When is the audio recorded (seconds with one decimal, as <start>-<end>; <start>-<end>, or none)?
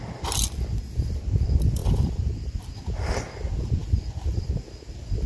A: 0.0-1.8; 2.6-3.8; 4.5-5.3